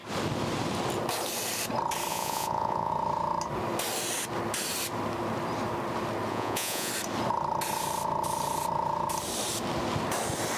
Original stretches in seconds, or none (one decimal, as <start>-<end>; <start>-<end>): 0.0-2.1; 2.9-6.3; 6.9-10.6